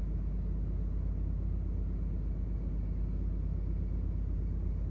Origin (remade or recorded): recorded